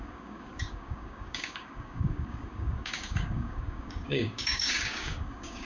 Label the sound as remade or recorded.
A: remade